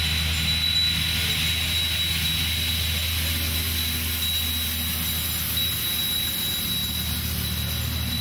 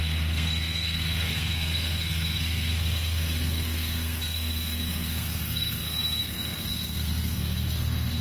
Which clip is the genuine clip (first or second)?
first